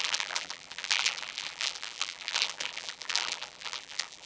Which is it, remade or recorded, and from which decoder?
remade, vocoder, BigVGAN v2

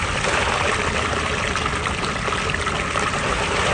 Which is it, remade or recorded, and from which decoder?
recorded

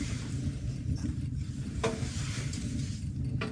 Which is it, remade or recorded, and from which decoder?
remade, vocoder, BigVGAN v2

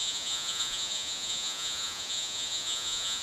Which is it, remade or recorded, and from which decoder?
remade, vocoder, Vocos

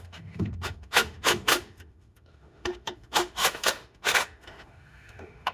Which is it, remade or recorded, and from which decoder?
remade, autoencoder, DAC-VAE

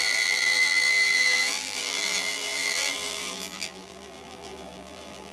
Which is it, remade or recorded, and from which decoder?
remade, vocoder, BigVGAN v2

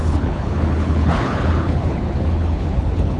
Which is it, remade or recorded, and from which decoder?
remade, codec, HILCodec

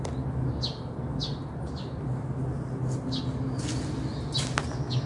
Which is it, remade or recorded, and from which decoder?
recorded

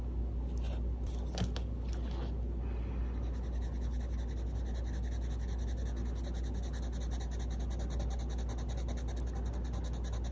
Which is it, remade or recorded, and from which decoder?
recorded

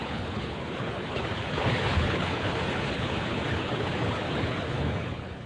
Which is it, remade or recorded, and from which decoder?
remade, codec, HILCodec